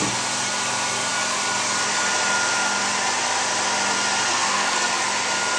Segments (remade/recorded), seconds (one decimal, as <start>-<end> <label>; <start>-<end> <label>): 0.0-4.3 recorded; 4.3-4.9 remade; 4.9-5.6 recorded